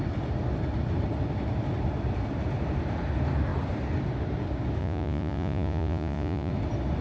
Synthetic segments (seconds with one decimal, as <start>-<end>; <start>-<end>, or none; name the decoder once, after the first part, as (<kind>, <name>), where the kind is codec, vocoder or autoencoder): 4.8-6.5 (vocoder, Vocos)